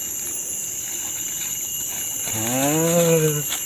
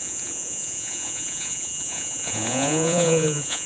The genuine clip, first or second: first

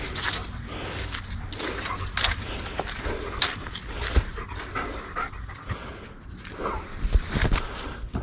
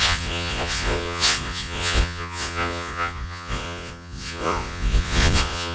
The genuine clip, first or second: first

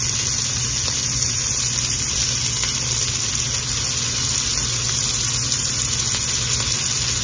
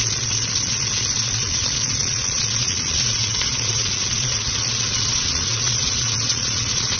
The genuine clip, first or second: first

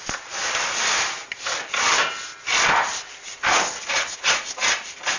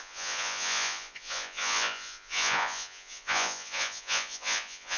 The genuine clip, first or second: first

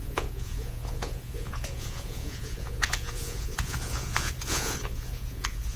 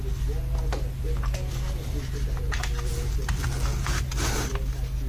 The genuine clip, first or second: second